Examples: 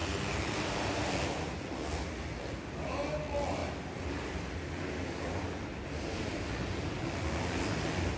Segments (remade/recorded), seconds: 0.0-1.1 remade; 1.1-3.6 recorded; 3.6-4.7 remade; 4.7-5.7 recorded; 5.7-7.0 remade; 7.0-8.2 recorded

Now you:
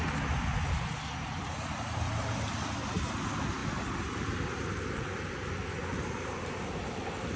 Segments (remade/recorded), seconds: 0.0-5.8 recorded; 5.8-6.8 remade; 6.8-7.4 recorded